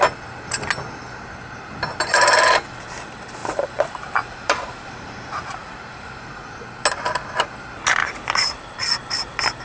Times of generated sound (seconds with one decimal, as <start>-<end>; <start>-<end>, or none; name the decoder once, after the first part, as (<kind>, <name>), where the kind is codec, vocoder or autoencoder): 3.4-6.6 (vocoder, BigVGAN v2)